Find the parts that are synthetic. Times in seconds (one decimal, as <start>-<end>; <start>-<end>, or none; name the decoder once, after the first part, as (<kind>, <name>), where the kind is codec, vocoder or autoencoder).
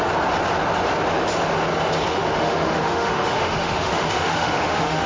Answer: 2.1-5.1 (autoencoder, DAC-VAE)